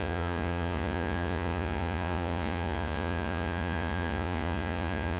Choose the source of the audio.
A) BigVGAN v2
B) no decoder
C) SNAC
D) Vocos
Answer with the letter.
D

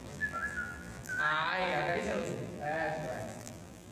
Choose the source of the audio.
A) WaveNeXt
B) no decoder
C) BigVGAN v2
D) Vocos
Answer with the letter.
C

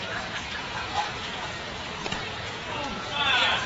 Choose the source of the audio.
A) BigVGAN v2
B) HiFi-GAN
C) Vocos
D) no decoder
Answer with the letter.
C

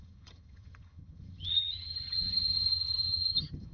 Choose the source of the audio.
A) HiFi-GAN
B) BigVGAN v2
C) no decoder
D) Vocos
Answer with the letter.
A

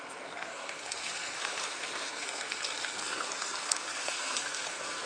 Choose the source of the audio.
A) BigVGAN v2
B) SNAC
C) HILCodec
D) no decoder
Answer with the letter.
B